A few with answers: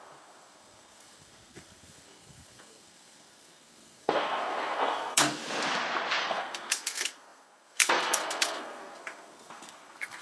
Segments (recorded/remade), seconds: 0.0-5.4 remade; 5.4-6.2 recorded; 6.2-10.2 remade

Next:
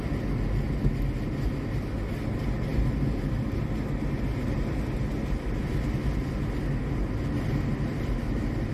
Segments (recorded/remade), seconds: 0.0-8.7 recorded

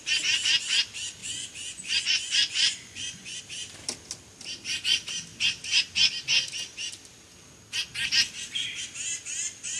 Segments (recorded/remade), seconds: 0.0-1.2 recorded; 1.2-3.4 remade; 3.4-9.8 recorded